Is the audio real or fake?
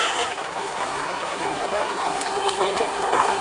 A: fake